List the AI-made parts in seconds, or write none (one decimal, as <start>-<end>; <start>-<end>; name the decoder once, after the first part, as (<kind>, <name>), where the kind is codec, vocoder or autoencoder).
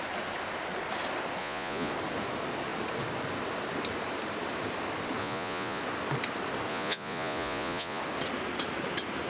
1.4-1.9 (vocoder, Vocos); 5.2-5.8; 6.7-8.0